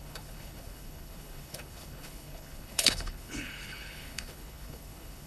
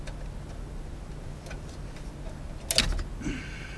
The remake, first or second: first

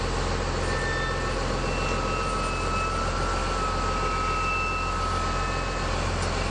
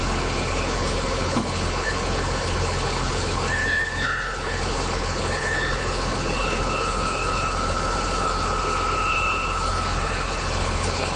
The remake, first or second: second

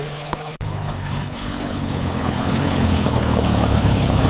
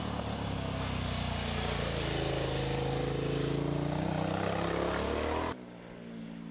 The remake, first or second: first